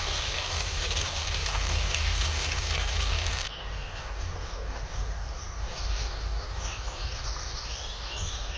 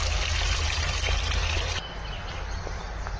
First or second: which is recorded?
second